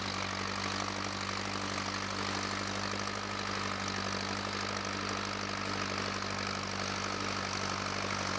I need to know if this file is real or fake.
real